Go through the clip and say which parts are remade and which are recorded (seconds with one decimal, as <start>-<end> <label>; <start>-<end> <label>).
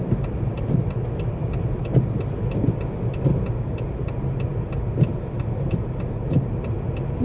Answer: 0.0-7.2 recorded